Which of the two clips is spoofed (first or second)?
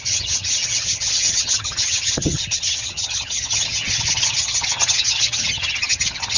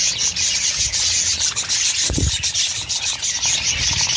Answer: first